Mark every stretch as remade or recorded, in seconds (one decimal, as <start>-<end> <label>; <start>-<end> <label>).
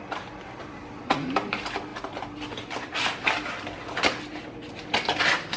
0.0-5.6 recorded